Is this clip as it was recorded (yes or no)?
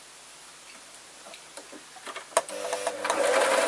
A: yes